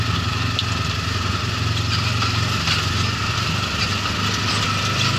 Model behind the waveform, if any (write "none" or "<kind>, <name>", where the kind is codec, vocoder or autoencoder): none